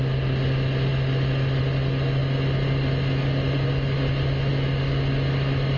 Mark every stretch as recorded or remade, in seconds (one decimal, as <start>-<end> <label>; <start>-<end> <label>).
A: 0.0-5.8 recorded